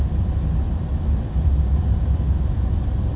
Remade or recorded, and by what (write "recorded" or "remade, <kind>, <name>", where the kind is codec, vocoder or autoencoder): recorded